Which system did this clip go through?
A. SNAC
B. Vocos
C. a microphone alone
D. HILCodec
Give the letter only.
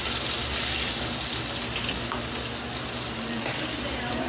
C